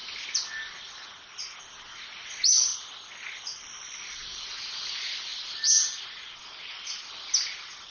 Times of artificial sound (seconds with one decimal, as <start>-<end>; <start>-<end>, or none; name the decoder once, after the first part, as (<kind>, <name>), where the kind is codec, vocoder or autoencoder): 2.7-3.5 (vocoder, BigVGAN v2); 5.3-6.6